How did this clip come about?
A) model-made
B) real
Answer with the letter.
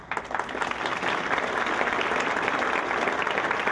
B